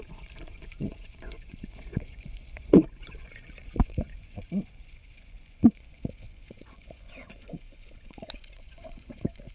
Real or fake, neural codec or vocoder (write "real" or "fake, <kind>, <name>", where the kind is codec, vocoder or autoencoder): fake, vocoder, Vocos